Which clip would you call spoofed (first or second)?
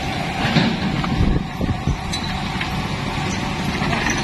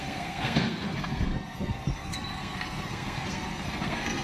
second